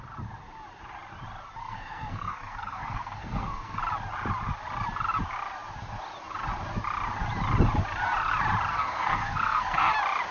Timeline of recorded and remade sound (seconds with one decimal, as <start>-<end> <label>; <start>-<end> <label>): 0.0-1.6 recorded; 1.6-3.8 remade; 3.8-8.7 recorded; 8.7-9.9 remade; 9.9-10.3 recorded